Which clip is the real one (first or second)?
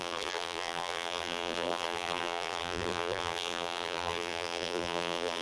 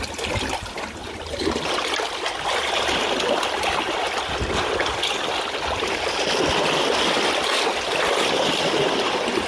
second